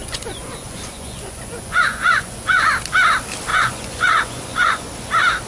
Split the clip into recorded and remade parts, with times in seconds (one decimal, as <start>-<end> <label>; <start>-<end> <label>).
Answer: 0.0-2.7 remade; 2.7-3.5 recorded; 3.5-4.9 remade; 4.9-5.5 recorded